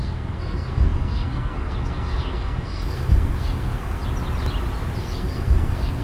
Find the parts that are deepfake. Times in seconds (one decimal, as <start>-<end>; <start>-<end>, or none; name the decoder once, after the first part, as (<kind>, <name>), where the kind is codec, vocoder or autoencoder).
0.0-4.0 (codec, SNAC); 5.0-6.0